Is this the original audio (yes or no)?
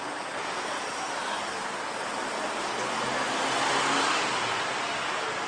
yes